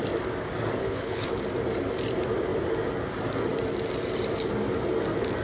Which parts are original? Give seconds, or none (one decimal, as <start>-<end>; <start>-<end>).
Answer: 0.0-0.8; 1.4-5.4